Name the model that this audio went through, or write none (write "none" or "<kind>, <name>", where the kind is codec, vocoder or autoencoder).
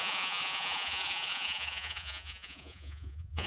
vocoder, Vocos